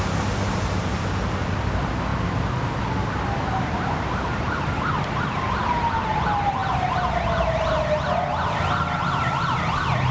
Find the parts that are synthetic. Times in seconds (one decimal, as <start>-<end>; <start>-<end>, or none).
none

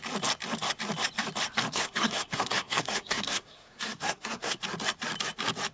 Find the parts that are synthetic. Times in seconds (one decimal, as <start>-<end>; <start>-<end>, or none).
1.7-4.6

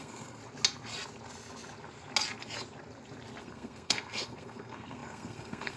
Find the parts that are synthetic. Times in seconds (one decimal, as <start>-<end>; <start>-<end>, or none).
0.0-0.4; 3.4-5.8

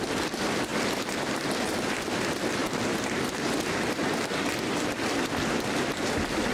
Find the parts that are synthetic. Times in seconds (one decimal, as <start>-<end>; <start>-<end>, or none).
0.0-0.7; 1.7-2.6; 6.1-6.5